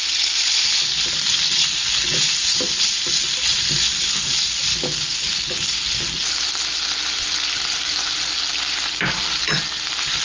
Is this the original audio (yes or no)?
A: yes